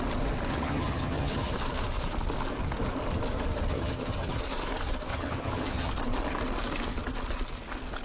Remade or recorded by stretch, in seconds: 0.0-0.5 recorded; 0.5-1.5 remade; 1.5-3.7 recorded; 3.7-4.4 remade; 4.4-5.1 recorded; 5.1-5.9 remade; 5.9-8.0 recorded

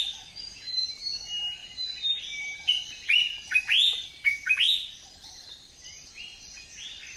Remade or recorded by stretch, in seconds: 0.0-1.6 recorded; 1.6-3.6 remade; 3.6-7.2 recorded